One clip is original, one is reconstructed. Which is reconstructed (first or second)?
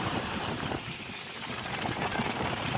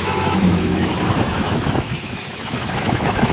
second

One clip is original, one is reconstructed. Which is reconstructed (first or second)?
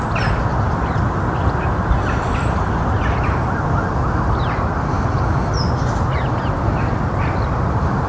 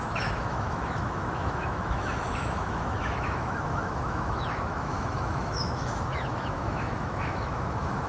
second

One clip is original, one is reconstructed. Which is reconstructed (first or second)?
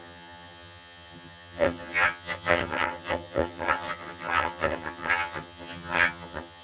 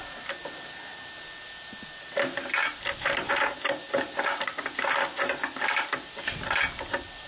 first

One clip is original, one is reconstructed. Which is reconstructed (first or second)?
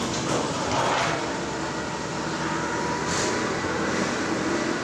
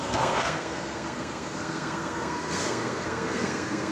second